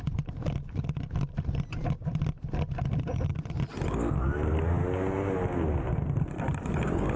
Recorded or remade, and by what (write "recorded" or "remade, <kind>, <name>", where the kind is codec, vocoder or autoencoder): recorded